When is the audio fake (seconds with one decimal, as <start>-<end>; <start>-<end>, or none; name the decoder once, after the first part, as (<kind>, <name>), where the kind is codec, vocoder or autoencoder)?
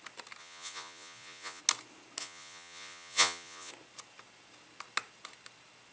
0.4-1.6 (vocoder, Vocos); 2.2-3.7